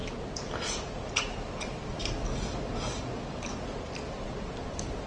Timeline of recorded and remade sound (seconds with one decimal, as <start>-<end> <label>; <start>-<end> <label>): 0.0-5.1 recorded